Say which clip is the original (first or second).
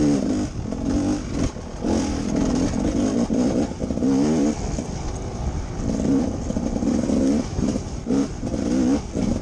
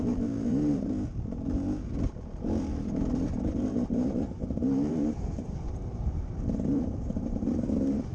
first